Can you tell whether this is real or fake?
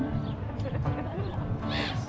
real